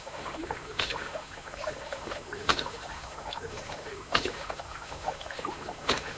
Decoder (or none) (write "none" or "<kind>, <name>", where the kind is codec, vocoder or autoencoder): autoencoder, DAC-VAE